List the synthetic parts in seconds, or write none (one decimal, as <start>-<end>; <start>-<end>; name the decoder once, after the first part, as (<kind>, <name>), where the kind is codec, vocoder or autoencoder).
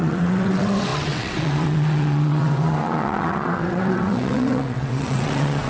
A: 0.0-5.7 (vocoder, WaveNeXt)